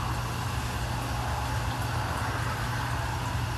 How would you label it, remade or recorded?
recorded